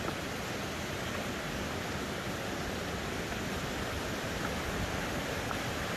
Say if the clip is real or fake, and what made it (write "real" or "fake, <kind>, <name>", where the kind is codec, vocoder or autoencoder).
real